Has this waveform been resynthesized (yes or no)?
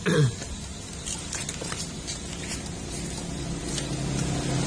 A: no